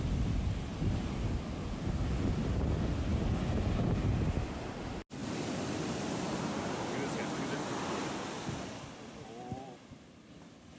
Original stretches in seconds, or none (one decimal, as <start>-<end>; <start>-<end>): 0.0-10.8